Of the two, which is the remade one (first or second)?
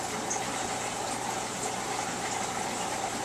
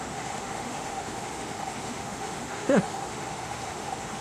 second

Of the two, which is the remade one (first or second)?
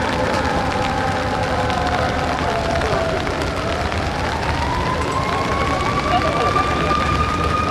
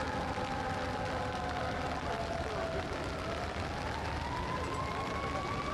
first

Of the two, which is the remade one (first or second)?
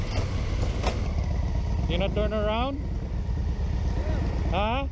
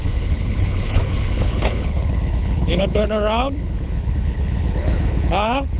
second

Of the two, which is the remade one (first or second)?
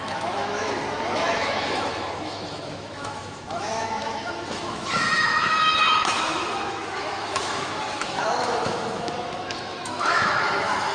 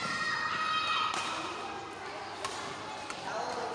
first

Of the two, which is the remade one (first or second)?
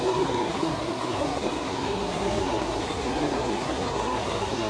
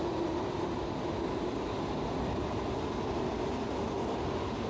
first